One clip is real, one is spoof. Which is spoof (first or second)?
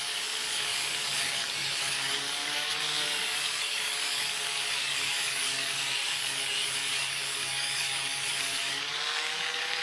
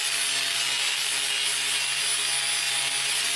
first